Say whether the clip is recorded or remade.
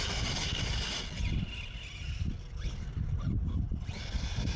recorded